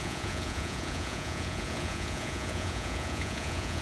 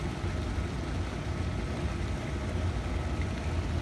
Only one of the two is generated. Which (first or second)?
first